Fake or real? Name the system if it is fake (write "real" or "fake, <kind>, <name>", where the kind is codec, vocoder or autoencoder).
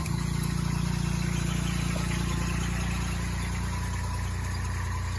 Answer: real